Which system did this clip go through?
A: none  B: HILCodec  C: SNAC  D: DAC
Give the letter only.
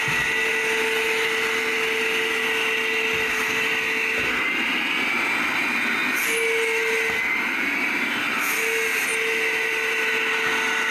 A